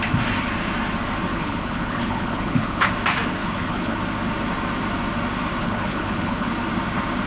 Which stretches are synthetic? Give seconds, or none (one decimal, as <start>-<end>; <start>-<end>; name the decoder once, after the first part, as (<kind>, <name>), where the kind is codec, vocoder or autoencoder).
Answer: 1.3-2.9 (codec, HILCodec); 3.4-4.0; 5.6-6.5